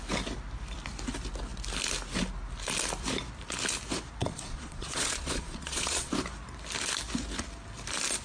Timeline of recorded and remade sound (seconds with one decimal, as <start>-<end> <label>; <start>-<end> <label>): 0.0-4.2 recorded; 4.2-6.1 remade; 6.1-8.2 recorded